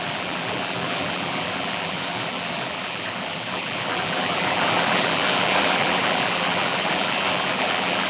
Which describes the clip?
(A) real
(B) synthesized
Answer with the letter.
B